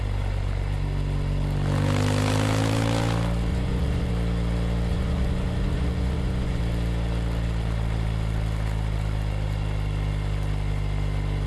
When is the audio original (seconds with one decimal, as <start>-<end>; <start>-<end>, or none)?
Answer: 0.0-3.5; 4.1-4.9; 6.6-11.5